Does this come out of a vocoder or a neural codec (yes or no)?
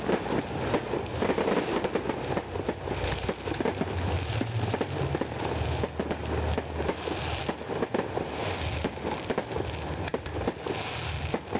no